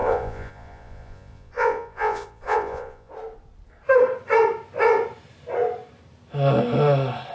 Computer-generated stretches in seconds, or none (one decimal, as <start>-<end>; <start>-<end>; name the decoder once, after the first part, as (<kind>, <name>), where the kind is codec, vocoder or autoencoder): 0.0-3.1 (vocoder, Vocos)